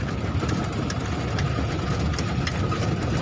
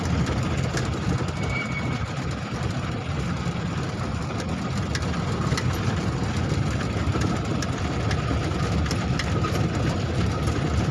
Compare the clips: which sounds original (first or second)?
first